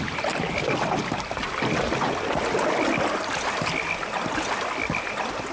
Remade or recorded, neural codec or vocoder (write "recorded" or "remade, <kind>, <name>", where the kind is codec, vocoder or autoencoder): recorded